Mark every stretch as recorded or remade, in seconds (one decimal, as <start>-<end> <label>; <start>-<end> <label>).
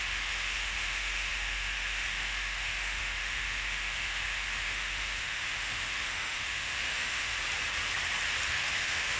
0.0-7.3 remade; 7.3-8.5 recorded; 8.5-9.2 remade